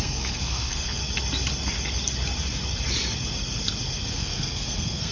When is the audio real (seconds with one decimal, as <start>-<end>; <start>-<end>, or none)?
1.0-4.1